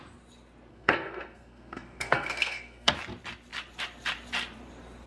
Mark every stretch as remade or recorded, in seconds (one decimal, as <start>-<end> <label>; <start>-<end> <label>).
0.0-0.7 recorded; 0.7-2.9 remade; 2.9-5.1 recorded